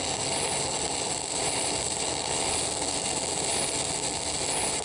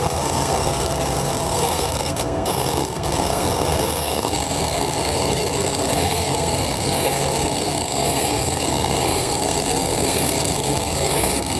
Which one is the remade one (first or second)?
second